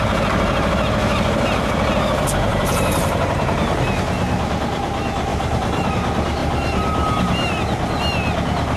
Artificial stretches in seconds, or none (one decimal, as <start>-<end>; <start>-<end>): 2.5-3.9; 5.3-5.9; 6.4-7.5